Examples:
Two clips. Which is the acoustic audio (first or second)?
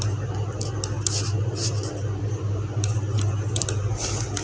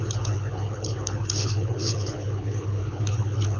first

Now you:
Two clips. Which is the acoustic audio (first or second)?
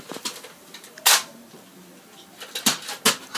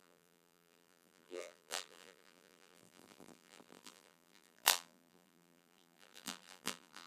first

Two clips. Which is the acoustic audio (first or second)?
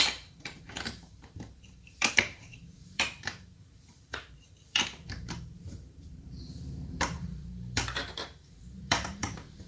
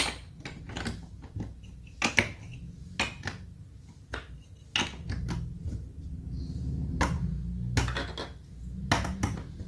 second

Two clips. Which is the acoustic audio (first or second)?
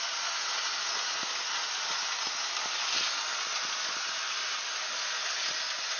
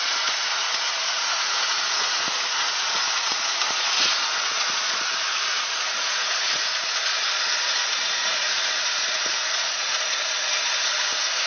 first